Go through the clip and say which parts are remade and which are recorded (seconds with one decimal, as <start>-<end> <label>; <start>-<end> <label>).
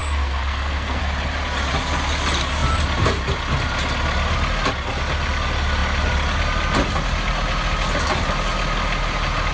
0.0-1.0 remade; 1.0-9.5 recorded